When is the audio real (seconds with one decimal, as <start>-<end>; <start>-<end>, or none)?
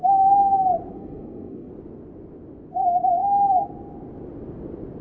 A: 0.0-0.9; 1.7-5.0